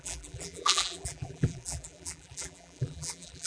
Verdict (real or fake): fake